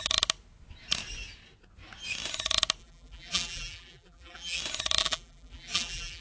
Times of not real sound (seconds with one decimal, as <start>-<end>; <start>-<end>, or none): 2.8-4.6; 5.0-6.2